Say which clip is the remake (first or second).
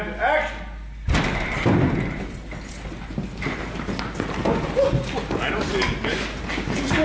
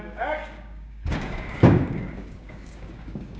second